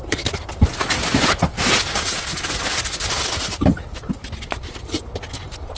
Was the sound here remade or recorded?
recorded